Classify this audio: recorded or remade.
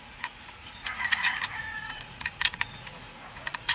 remade